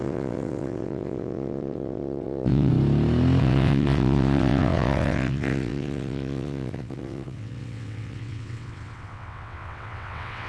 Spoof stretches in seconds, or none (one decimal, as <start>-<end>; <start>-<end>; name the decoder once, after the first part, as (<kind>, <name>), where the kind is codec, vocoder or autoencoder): 0.0-2.7 (vocoder, WaveNeXt); 3.4-10.5